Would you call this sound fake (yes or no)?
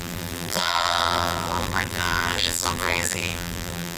yes